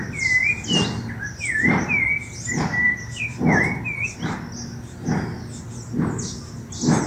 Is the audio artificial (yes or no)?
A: no